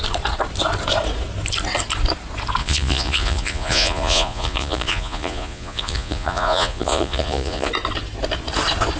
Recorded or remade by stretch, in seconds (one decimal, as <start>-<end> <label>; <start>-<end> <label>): 0.0-2.6 recorded; 2.6-7.7 remade; 7.7-9.0 recorded